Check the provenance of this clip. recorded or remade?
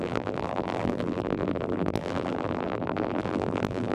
remade